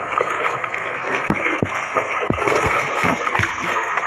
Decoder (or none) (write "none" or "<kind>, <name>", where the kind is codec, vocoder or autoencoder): codec, SNAC